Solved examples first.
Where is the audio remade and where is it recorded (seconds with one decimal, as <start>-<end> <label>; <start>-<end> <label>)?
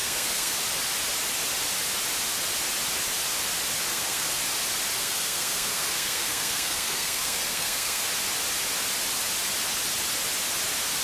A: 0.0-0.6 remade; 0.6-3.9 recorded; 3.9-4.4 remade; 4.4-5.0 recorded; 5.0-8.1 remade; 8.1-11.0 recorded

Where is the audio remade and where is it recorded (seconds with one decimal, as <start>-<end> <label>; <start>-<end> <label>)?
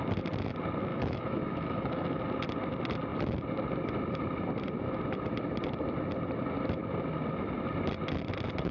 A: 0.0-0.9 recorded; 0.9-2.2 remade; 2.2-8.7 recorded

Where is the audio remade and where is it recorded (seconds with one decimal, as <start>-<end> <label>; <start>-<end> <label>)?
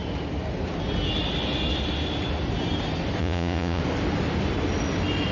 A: 0.0-3.2 recorded; 3.2-3.8 remade; 3.8-5.3 recorded